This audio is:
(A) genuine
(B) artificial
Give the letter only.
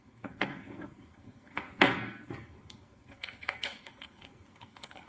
B